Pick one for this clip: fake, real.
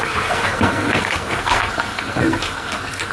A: fake